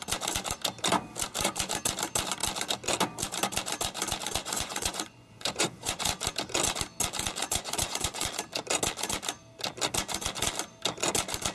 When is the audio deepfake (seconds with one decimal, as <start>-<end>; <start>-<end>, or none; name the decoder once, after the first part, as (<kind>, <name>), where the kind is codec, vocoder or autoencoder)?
4.4-6.0 (vocoder, Vocos); 7.4-8.3